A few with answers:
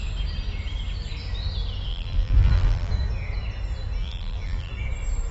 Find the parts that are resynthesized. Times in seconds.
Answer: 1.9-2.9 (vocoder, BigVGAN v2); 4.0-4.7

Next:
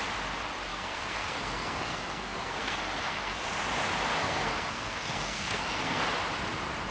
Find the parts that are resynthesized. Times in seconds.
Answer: 0.7-3.5 (codec, SNAC); 4.1-6.0

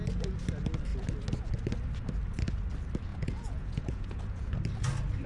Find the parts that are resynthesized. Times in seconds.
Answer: 3.1-4.5 (vocoder, Vocos)